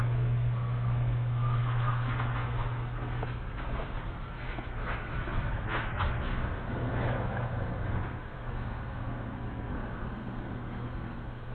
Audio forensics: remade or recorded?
remade